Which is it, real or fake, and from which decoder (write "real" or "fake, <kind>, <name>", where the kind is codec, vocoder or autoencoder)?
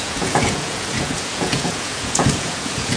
fake, vocoder, Vocos